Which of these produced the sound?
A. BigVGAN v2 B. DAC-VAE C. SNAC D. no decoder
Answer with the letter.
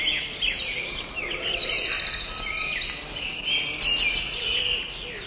D